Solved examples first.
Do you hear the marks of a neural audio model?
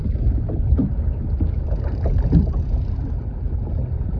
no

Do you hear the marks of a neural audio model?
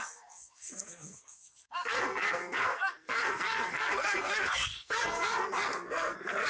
yes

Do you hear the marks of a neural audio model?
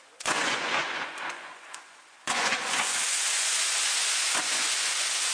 yes